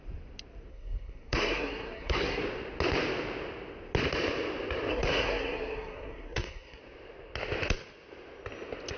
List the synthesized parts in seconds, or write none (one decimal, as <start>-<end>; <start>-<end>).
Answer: 0.7-2.4; 4.9-6.8